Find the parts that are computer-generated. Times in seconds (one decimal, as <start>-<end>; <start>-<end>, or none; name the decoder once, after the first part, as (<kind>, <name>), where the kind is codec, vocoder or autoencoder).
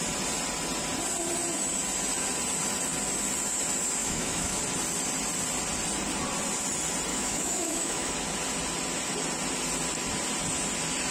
4.0-4.6 (autoencoder, DAC-VAE); 7.1-8.1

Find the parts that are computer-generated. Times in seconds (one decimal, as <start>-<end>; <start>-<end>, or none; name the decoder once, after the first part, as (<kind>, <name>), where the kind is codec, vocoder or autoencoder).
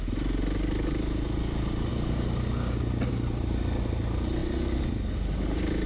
4.4-4.9 (vocoder, BigVGAN v2)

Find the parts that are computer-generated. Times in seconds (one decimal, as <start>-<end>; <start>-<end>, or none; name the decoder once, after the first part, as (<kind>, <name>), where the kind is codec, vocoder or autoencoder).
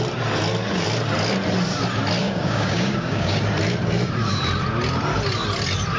2.2-3.4 (codec, DAC)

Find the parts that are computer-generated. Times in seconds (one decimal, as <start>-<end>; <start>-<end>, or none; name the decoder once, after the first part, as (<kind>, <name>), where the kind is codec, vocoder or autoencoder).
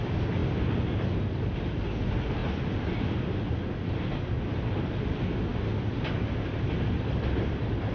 none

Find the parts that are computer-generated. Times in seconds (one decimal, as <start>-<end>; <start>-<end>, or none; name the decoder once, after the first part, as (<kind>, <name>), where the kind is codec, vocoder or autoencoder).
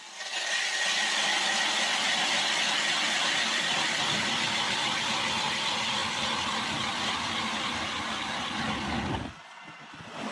none